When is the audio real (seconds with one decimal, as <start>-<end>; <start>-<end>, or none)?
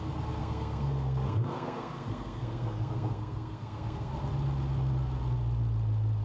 0.0-0.4; 4.1-6.2